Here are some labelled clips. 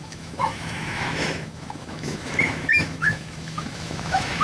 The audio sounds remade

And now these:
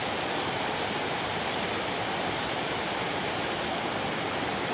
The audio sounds recorded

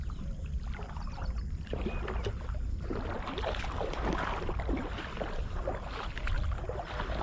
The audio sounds recorded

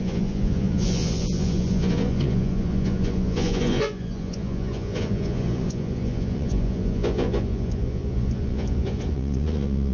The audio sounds remade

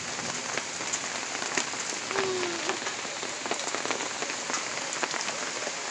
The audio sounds recorded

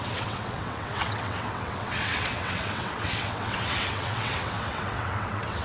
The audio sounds remade